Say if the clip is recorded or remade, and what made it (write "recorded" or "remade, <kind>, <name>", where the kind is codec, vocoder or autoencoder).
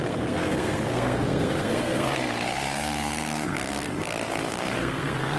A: remade, codec, SNAC